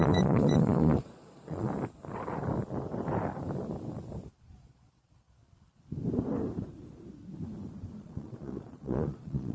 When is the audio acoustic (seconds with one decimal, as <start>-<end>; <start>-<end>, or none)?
1.7-4.4; 5.4-8.0